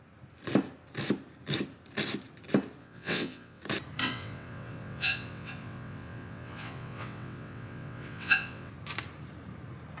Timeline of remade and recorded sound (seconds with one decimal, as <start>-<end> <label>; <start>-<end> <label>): 0.0-2.8 recorded; 2.8-3.6 remade; 3.6-4.0 recorded; 4.0-8.7 remade; 8.7-10.0 recorded

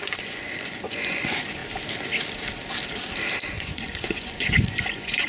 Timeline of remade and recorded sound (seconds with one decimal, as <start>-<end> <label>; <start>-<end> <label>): 0.0-1.6 remade; 1.6-3.5 recorded; 3.5-5.3 remade

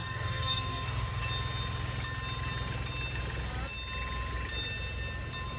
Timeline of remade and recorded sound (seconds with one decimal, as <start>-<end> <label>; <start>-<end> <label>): 0.0-1.2 remade; 1.2-5.6 recorded

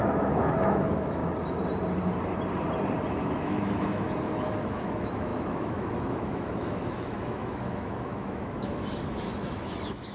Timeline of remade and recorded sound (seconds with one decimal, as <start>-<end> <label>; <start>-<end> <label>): 0.0-1.2 remade; 1.2-3.1 recorded; 3.1-10.1 remade

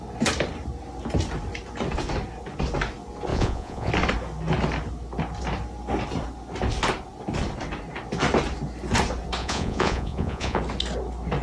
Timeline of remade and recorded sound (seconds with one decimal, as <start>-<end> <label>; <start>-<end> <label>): 0.0-3.3 recorded; 3.3-3.9 remade; 3.9-9.4 recorded; 9.4-10.6 remade; 10.6-11.4 recorded

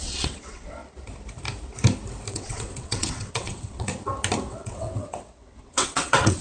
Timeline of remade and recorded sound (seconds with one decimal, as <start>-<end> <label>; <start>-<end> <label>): 0.0-0.8 remade; 0.8-2.3 recorded; 2.3-3.9 remade; 3.9-4.5 recorded; 4.5-6.4 remade

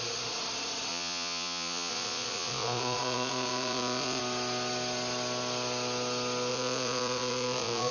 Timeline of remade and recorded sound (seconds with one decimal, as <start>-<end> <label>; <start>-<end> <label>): 0.0-0.9 recorded; 0.9-4.2 remade; 4.2-6.5 recorded; 6.5-7.9 remade